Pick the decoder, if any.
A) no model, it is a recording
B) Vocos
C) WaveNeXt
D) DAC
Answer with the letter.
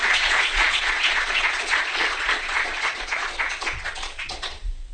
B